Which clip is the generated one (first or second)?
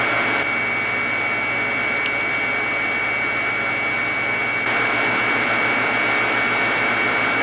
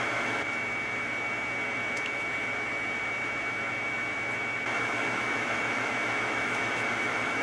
second